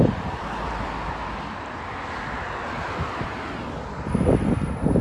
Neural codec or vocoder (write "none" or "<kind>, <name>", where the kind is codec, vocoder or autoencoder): none